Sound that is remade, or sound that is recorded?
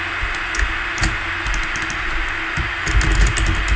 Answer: recorded